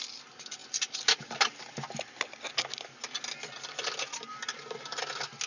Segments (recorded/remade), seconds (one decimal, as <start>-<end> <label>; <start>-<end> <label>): 0.0-5.5 recorded